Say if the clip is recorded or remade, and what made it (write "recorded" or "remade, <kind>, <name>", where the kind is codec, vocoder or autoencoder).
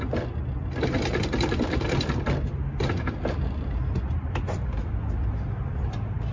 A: recorded